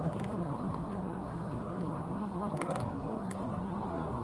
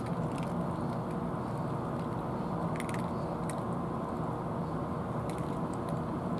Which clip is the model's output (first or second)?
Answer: first